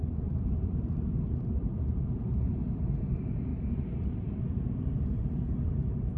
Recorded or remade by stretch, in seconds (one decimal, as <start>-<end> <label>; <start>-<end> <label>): 0.0-6.2 remade